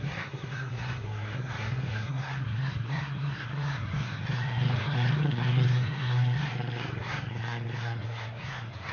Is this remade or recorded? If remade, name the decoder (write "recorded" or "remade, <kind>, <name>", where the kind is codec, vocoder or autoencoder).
remade, codec, SNAC